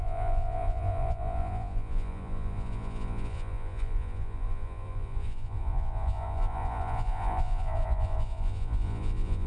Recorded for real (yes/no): no